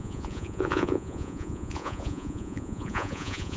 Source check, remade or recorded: remade